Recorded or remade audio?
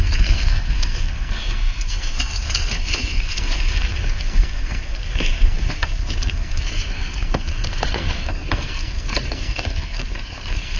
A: remade